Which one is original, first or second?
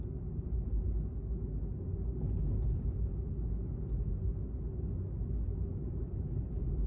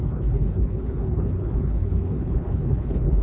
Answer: first